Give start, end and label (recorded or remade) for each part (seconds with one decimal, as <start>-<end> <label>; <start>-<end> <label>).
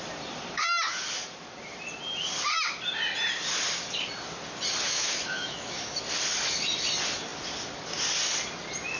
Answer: 0.0-4.9 recorded; 4.9-6.0 remade; 6.0-9.0 recorded